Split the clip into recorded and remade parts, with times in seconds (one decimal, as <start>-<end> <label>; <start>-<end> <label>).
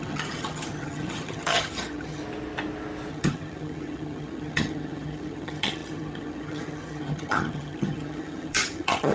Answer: 0.0-2.2 remade; 2.2-3.1 recorded; 3.1-9.1 remade